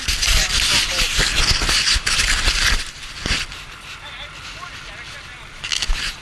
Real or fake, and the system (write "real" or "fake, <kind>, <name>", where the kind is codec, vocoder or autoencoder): real